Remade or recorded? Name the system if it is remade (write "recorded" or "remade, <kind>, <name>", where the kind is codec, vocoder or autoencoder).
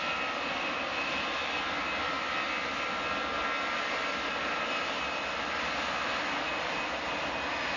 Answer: recorded